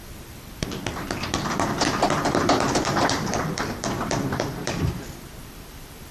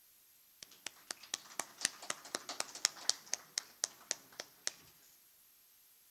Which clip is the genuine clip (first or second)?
second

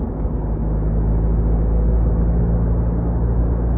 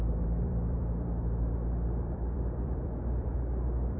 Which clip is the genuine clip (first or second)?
first